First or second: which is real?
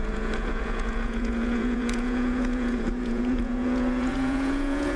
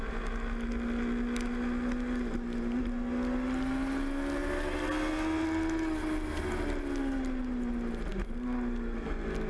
second